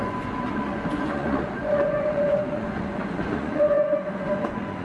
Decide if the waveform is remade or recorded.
remade